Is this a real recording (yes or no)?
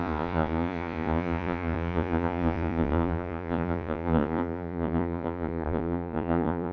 no